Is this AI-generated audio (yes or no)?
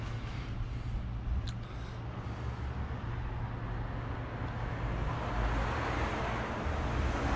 no